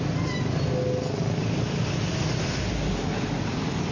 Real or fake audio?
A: real